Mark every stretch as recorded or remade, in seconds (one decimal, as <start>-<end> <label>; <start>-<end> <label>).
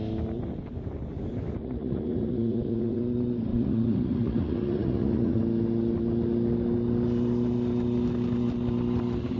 0.0-1.6 recorded; 1.6-3.0 remade; 3.0-3.5 recorded; 3.5-5.4 remade; 5.4-9.4 recorded